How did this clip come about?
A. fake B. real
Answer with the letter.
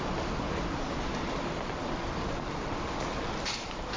B